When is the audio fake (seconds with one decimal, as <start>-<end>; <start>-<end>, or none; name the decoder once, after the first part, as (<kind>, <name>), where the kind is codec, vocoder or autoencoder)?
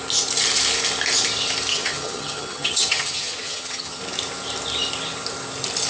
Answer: 1.7-4.0 (vocoder, HiFi-GAN)